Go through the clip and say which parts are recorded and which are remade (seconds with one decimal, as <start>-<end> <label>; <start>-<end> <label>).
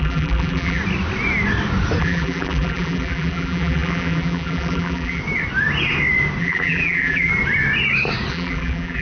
0.0-0.8 remade; 0.8-2.0 recorded; 2.0-5.2 remade; 5.2-6.4 recorded; 6.4-7.3 remade; 7.3-8.3 recorded; 8.3-9.0 remade